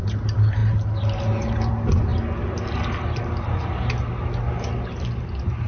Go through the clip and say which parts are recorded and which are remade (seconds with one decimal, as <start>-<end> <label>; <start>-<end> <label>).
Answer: 0.0-5.7 recorded